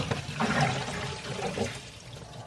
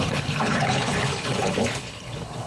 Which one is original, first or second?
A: first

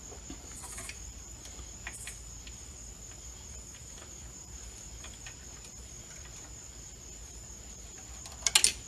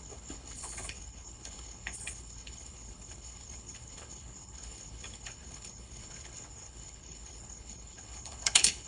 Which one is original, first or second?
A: first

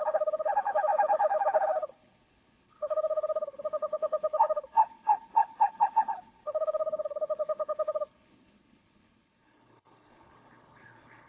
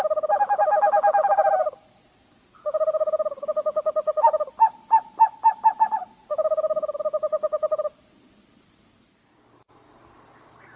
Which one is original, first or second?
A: second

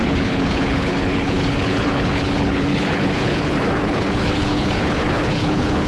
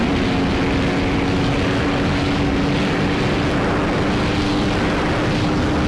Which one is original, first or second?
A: second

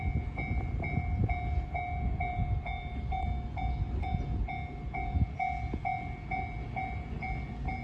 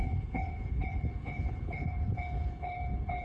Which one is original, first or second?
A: first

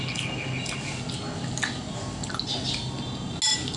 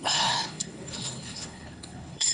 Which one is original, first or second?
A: first